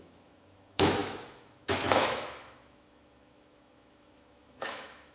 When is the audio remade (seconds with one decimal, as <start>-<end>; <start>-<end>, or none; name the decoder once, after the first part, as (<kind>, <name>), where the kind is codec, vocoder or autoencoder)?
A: 0.0-5.1 (autoencoder, DAC-VAE)